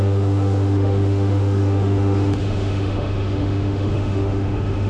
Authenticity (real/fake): fake